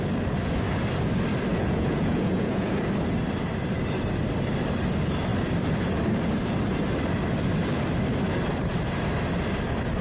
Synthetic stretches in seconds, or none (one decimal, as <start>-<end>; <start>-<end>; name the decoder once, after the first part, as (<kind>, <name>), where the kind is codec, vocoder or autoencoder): 1.5-2.7 (vocoder, Vocos)

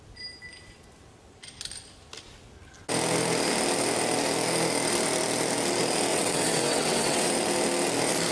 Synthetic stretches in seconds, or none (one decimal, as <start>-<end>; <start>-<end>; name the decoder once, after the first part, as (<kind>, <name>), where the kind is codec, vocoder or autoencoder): 6.1-7.3 (vocoder, WaveNeXt)

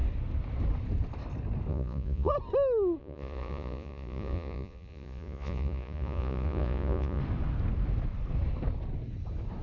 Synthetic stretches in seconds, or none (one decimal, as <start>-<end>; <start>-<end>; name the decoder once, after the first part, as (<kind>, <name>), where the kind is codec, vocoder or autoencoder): 1.7-2.3 (vocoder, Vocos); 3.0-7.2